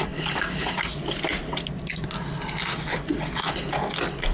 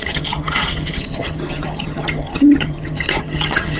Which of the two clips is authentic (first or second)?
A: first